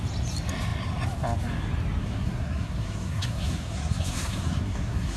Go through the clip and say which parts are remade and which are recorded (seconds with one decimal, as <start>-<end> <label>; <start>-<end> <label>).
0.0-2.0 recorded; 2.0-5.2 remade